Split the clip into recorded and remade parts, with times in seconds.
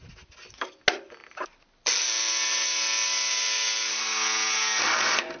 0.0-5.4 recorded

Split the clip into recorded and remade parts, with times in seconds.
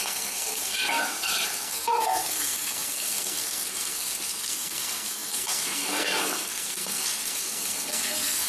0.0-8.5 remade